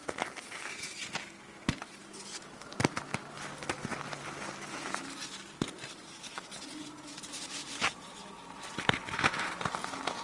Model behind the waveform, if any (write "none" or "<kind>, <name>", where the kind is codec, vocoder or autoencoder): none